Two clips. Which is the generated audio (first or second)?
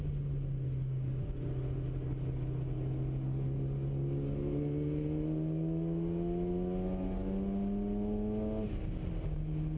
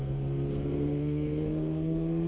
second